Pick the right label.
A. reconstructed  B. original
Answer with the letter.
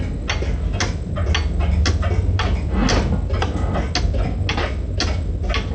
B